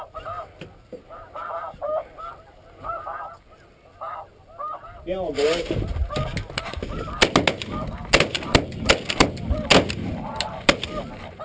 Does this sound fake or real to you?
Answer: real